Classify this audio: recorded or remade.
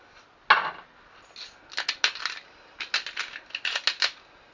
recorded